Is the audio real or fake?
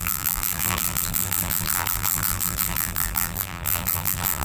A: fake